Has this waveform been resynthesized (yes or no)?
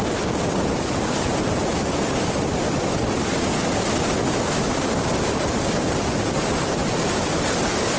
no